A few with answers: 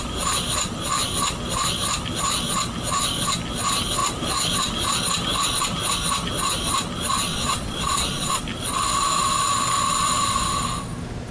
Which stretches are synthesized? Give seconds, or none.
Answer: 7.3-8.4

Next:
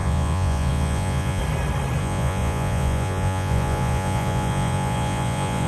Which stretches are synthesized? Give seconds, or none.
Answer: 0.0-1.4; 2.0-5.7

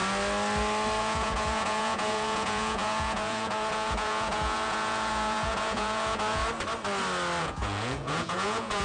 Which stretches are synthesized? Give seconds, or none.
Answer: 1.0-6.4; 7.4-8.8

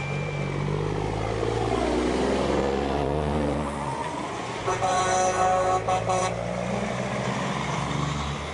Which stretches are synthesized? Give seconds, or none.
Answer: 2.6-5.0

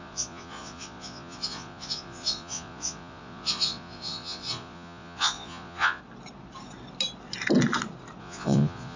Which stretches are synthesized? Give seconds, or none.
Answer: 0.0-6.0; 8.2-9.0